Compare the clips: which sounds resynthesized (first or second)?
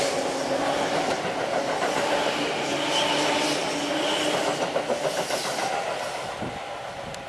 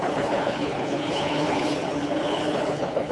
second